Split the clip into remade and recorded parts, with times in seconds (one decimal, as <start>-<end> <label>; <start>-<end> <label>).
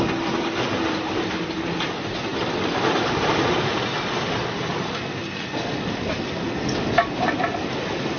0.0-2.3 recorded; 2.3-6.3 remade; 6.3-8.2 recorded